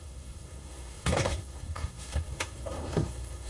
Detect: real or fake fake